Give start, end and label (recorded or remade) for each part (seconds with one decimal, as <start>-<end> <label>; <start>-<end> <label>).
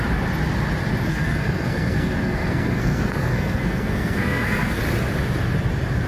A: 0.0-1.1 recorded; 1.1-4.8 remade; 4.8-6.1 recorded